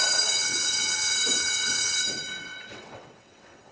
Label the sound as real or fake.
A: fake